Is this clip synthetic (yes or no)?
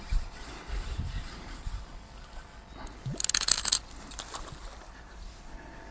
no